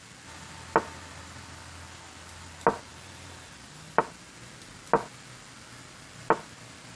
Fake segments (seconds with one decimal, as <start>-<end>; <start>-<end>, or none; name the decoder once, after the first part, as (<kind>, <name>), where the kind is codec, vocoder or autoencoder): 2.9-4.0 (vocoder, BigVGAN v2)